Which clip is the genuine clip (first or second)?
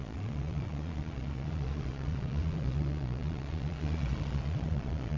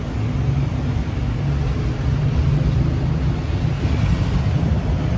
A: second